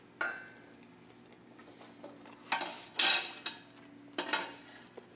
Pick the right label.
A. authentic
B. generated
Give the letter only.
A